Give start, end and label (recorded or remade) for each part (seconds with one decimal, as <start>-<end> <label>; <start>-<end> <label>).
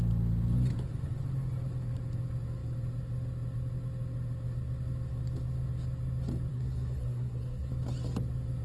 0.0-6.5 recorded; 6.5-7.7 remade; 7.7-8.6 recorded